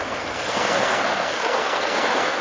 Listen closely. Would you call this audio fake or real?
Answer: fake